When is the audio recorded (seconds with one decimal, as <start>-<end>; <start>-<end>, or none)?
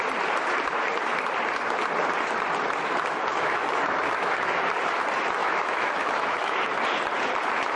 0.0-3.3; 4.6-5.4; 6.6-7.8